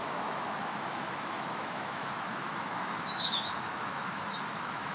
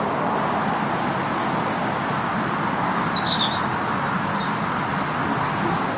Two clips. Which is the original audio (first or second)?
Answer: second